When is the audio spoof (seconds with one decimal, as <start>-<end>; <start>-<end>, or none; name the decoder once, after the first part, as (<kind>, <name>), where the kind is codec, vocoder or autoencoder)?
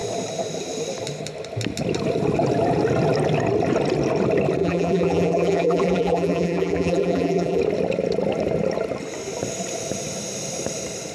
4.6-7.6 (vocoder, BigVGAN v2)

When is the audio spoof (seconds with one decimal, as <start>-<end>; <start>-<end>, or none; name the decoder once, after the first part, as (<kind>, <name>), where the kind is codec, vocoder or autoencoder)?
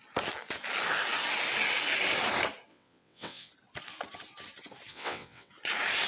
2.7-3.5 (vocoder, WaveNeXt); 4.9-5.5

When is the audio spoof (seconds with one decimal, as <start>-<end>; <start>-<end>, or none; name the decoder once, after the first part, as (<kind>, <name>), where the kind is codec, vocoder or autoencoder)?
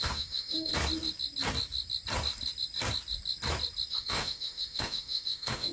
0.0-0.7 (autoencoder, DAC-VAE); 3.9-5.7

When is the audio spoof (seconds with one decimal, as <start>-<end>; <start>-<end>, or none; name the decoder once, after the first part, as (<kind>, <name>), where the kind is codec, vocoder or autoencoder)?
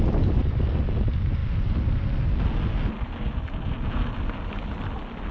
none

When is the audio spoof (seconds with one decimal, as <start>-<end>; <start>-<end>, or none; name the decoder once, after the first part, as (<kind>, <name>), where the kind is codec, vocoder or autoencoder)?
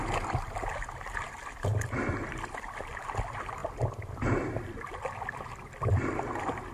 1.7-2.4 (vocoder, BigVGAN v2)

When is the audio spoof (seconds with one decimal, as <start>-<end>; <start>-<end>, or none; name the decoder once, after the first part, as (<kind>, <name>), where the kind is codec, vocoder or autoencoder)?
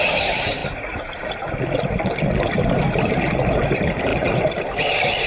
4.1-4.8 (vocoder, BigVGAN v2)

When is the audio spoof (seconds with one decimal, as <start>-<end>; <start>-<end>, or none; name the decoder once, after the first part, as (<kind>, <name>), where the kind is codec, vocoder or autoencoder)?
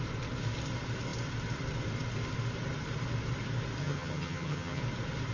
3.8-4.8 (vocoder, HiFi-GAN)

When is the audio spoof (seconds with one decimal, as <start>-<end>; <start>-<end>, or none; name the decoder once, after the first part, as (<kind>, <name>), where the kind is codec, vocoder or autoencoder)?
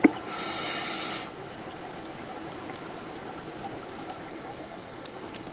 4.3-5.5 (codec, SNAC)